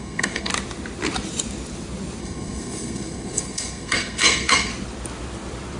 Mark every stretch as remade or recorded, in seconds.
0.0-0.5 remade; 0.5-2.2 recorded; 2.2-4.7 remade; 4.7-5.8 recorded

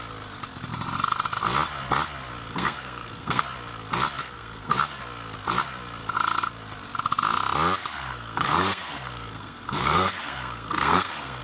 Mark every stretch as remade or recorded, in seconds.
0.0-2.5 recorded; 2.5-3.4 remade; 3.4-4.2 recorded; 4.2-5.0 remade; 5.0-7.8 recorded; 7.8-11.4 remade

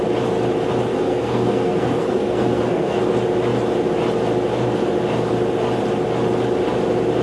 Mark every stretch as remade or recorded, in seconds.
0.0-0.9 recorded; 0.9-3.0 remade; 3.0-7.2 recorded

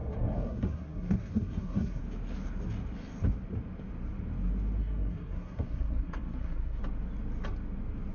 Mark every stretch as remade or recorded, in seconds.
0.0-2.0 remade; 2.0-4.8 recorded; 4.8-6.8 remade; 6.8-8.1 recorded

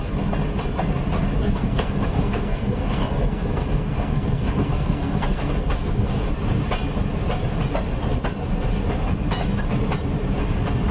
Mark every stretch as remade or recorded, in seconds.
0.0-1.4 recorded; 1.4-6.3 remade; 6.3-10.9 recorded

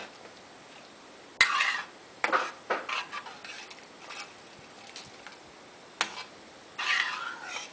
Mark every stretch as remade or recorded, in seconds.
0.0-7.7 recorded

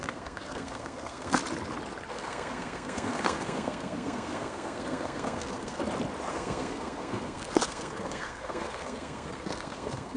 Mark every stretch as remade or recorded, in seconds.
0.0-1.4 remade; 1.4-2.1 recorded; 2.1-5.8 remade; 5.8-6.3 recorded; 6.3-10.2 remade